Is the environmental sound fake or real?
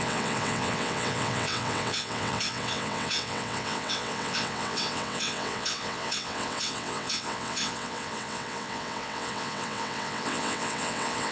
fake